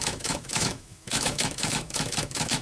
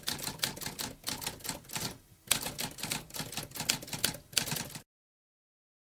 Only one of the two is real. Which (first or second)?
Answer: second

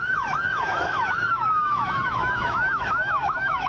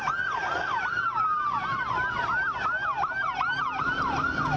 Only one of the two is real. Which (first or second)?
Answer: second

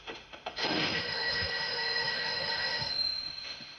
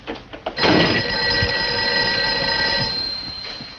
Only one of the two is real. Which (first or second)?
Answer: second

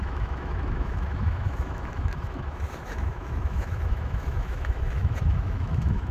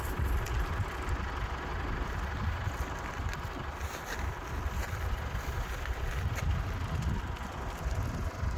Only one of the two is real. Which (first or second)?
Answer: second